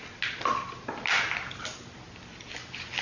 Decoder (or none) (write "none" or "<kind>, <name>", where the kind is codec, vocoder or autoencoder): none